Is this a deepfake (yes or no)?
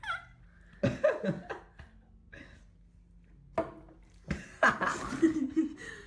no